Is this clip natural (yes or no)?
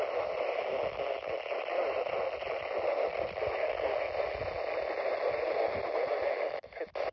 yes